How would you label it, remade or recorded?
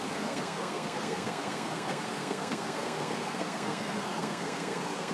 remade